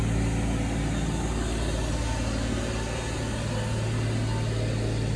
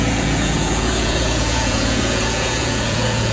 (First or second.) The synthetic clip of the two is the second